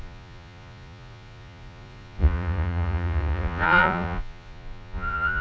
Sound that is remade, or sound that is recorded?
remade